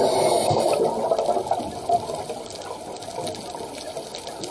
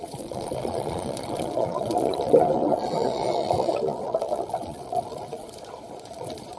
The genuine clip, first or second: first